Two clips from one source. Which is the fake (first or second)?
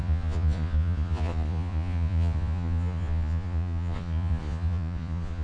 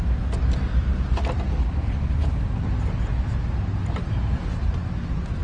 first